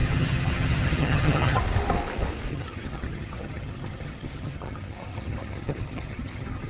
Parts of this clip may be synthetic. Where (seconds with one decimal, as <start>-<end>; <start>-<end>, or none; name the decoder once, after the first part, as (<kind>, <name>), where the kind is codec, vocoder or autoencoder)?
0.0-1.6 (vocoder, HiFi-GAN); 2.5-6.7